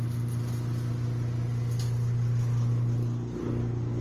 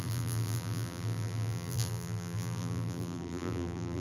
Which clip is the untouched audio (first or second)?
first